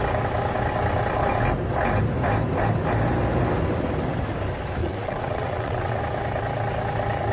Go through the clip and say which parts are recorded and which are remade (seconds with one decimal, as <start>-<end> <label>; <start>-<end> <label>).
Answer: 0.0-4.8 recorded; 4.8-6.0 remade; 6.0-7.3 recorded